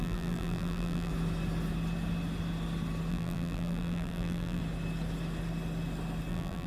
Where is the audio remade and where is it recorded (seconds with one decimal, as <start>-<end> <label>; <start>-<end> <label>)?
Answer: 0.0-1.1 remade; 1.1-3.1 recorded; 3.1-4.6 remade; 4.6-6.3 recorded; 6.3-6.7 remade